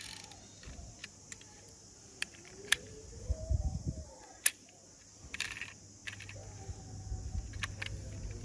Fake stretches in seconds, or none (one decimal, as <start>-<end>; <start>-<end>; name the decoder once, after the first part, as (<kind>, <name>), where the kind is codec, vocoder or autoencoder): 1.0-4.3 (vocoder, BigVGAN v2)